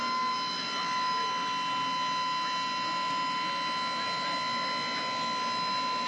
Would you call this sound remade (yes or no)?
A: no